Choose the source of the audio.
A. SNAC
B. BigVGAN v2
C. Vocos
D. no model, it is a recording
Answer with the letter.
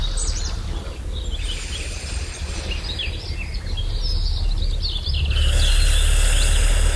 D